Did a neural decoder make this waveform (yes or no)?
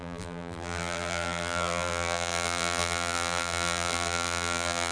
yes